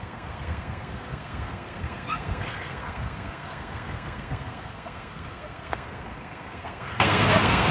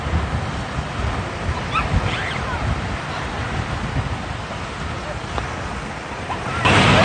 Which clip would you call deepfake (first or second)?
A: first